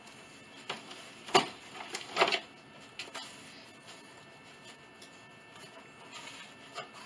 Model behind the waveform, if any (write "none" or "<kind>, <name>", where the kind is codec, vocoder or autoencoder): none